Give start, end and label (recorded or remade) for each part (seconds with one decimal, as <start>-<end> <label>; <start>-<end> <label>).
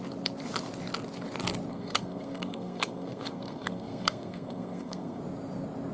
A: 0.0-1.7 recorded; 1.7-5.2 remade; 5.2-5.9 recorded